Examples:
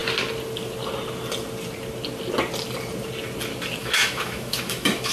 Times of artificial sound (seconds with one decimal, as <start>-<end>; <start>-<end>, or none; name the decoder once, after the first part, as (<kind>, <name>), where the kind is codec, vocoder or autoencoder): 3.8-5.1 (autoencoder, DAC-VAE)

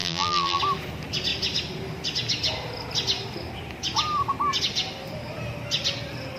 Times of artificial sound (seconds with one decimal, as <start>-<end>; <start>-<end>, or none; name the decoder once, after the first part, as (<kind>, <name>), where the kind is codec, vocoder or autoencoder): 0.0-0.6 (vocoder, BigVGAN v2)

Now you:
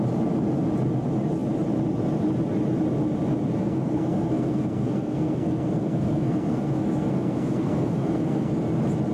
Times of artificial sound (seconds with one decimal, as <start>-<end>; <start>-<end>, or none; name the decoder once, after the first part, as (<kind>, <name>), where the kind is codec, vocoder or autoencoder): 3.6-8.6 (codec, SNAC)

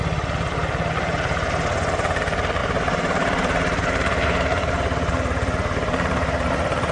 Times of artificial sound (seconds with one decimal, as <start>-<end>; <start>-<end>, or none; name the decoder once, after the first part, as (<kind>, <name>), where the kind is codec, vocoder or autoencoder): 2.6-6.5 (vocoder, BigVGAN v2)